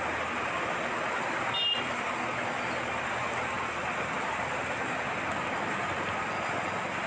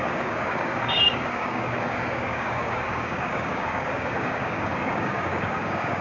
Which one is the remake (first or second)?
second